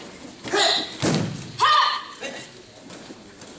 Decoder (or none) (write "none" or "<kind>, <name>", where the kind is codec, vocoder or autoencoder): none